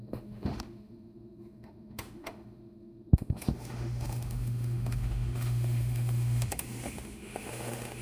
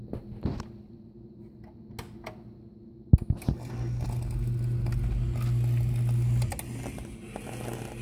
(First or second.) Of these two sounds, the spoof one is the first